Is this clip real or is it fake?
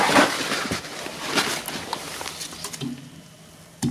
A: real